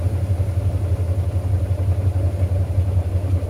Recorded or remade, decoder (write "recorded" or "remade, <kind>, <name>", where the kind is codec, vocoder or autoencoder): recorded